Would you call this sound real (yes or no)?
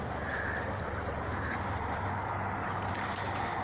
yes